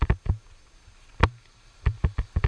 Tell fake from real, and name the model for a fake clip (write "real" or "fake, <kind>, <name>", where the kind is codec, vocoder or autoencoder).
real